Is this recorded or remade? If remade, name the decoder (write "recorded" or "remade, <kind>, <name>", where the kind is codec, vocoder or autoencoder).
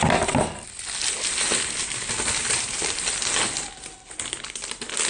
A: recorded